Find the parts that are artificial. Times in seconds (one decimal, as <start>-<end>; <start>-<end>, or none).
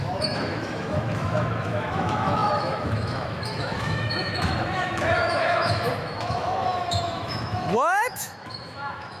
0.0-9.2